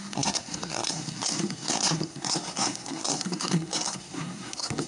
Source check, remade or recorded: remade